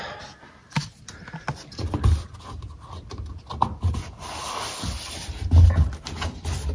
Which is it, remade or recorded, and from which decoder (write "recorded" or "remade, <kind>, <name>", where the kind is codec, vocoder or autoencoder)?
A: recorded